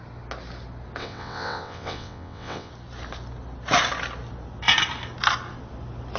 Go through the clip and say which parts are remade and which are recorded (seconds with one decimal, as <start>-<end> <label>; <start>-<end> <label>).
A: 0.0-1.0 recorded; 1.0-2.7 remade; 2.7-6.2 recorded